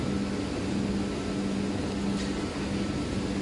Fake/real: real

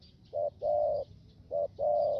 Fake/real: real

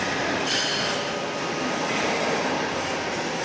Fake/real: real